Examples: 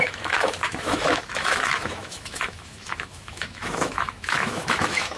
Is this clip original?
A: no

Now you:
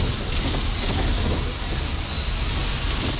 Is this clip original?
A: yes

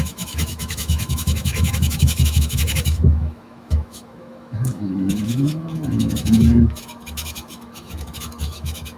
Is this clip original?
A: no